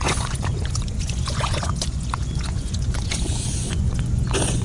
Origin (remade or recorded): remade